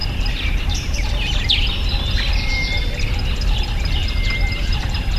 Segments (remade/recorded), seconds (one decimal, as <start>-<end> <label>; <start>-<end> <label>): 0.0-5.2 remade